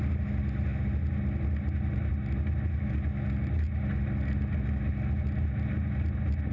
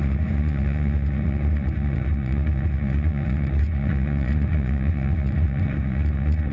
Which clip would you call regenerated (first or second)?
second